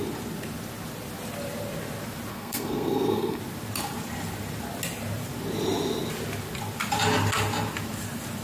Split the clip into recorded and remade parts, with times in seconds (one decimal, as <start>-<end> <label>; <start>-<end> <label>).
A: 0.0-2.3 recorded; 2.3-3.4 remade; 3.4-8.4 recorded